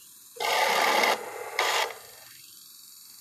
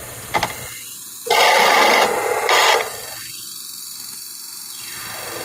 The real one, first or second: second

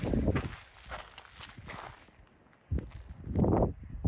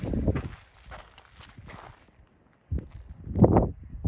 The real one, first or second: first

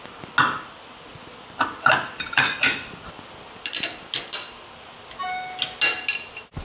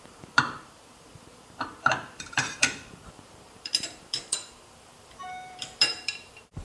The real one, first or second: first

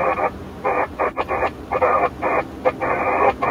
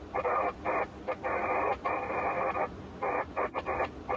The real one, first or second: first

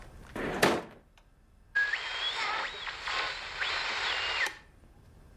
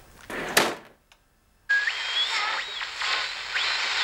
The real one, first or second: second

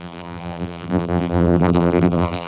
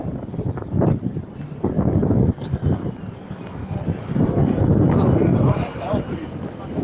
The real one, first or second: second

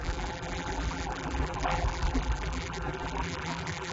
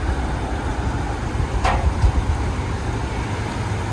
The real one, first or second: second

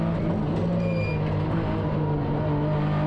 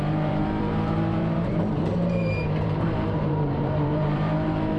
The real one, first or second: first